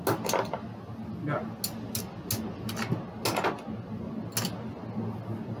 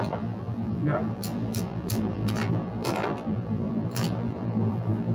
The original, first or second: first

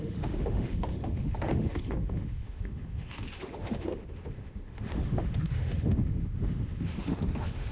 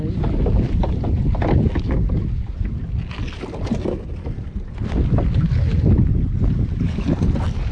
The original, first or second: second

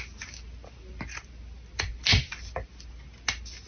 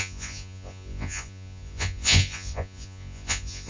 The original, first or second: first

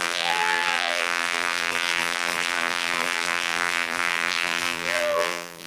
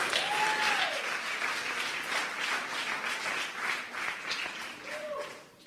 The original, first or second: second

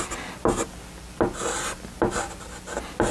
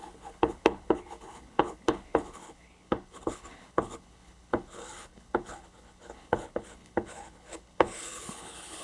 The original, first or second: first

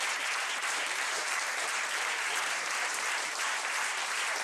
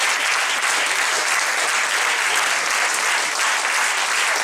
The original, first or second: second